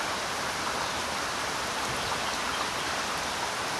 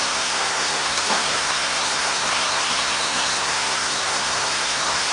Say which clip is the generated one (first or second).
second